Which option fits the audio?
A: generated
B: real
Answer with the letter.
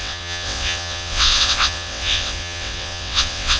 A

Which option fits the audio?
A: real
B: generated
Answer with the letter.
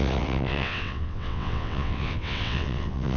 B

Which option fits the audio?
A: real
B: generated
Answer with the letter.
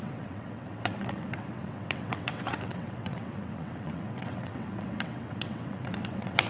B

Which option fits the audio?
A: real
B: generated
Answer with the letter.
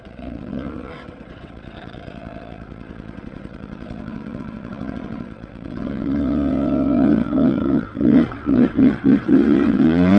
B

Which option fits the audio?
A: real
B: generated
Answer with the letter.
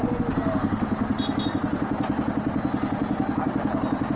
A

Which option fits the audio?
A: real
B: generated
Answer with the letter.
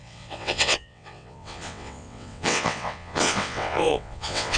B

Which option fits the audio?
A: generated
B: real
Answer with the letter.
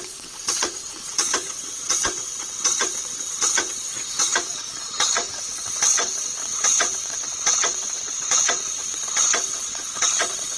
A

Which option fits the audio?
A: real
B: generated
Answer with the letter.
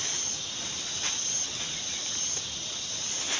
A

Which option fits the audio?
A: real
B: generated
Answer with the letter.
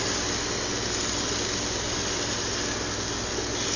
A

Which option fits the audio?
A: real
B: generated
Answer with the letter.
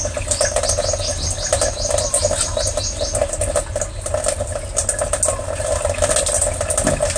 A